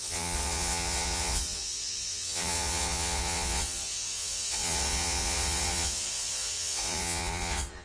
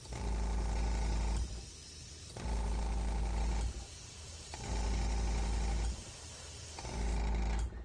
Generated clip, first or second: first